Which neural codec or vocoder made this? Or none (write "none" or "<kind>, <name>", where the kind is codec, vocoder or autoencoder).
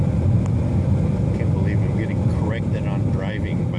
none